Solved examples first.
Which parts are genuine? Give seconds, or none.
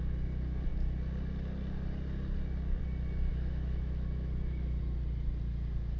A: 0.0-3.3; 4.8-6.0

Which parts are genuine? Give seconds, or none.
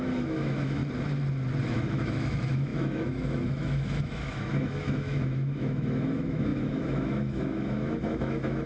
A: 0.8-1.6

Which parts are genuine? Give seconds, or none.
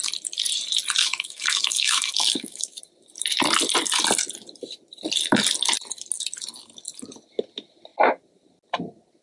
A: 0.0-1.0; 2.8-9.2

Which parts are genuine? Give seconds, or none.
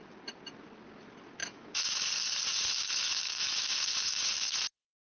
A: 0.0-1.4; 2.1-2.5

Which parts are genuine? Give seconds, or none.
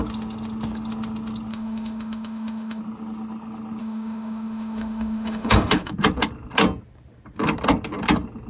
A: 0.0-1.5; 2.8-3.8; 5.9-8.5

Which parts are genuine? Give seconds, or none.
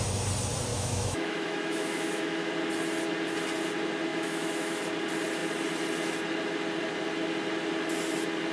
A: 0.0-0.7; 2.5-4.1; 4.8-8.5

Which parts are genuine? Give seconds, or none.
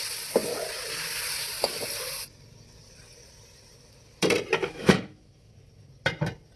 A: 0.0-4.6; 5.5-6.6